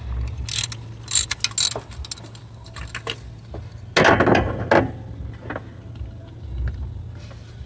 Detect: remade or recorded recorded